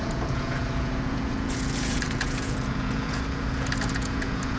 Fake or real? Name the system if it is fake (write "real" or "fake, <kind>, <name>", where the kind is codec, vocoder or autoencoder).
fake, vocoder, Vocos